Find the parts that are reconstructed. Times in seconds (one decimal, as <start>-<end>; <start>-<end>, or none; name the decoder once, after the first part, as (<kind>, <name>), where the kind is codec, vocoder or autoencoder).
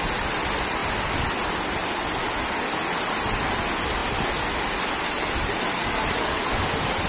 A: none